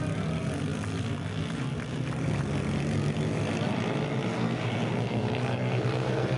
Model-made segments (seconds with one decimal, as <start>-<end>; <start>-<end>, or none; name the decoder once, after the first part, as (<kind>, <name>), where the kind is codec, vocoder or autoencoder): 4.3-6.4 (codec, SNAC)